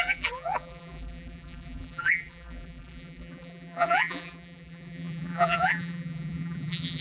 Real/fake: fake